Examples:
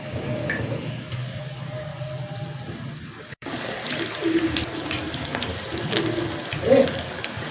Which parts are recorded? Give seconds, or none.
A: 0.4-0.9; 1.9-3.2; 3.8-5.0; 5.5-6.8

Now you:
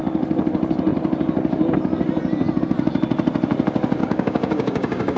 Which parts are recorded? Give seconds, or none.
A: 0.0-4.0